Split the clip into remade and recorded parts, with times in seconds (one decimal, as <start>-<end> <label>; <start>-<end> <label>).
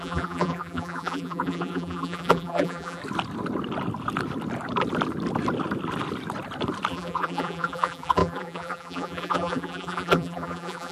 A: 0.0-3.0 remade; 3.0-6.9 recorded; 6.9-10.9 remade